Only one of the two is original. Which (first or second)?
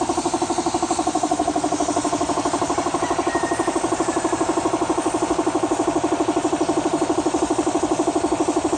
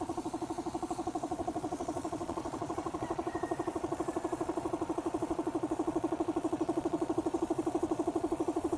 first